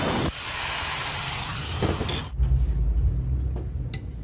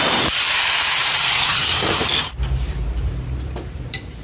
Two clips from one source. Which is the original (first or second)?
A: first